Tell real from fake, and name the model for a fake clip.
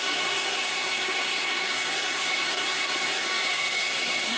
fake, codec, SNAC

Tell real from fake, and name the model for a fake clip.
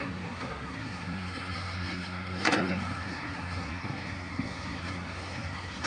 fake, codec, SNAC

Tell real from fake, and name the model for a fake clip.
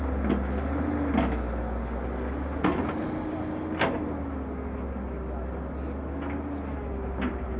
real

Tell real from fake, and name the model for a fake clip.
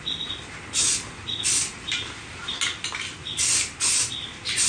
real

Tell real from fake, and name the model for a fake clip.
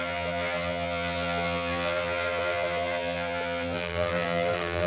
fake, vocoder, BigVGAN v2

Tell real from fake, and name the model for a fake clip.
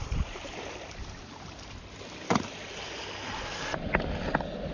real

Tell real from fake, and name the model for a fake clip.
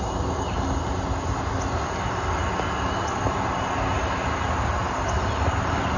real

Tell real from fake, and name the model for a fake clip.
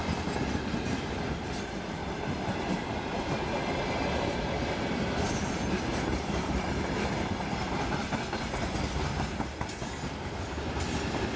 real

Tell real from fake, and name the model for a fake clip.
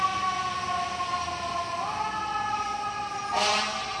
real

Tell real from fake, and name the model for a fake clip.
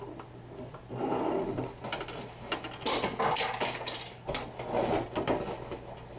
real